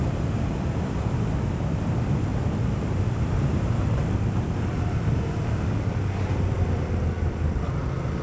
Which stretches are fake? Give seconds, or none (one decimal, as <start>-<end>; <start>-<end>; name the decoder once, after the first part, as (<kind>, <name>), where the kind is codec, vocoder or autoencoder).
2.3-4.6 (vocoder, BigVGAN v2)